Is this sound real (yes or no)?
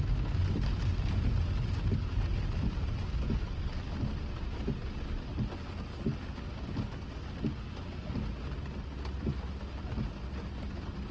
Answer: yes